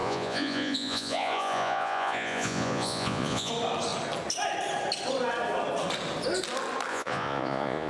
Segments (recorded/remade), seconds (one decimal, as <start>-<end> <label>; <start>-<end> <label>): 0.0-3.5 remade; 3.5-6.9 recorded; 6.9-7.9 remade